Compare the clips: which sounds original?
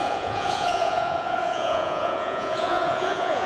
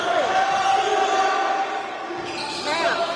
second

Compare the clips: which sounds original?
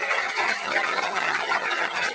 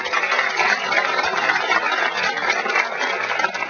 second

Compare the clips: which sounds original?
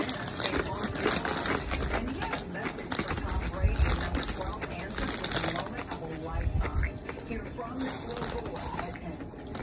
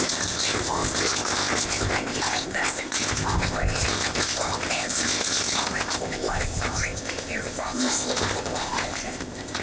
first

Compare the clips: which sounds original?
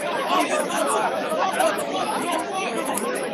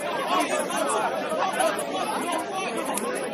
second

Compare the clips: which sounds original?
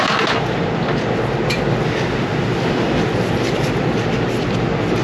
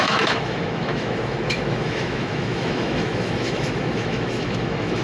first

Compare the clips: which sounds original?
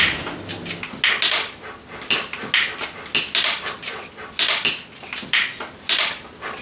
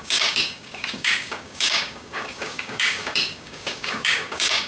first